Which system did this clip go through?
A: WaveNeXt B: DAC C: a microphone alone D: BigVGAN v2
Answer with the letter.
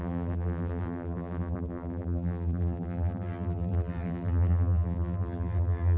D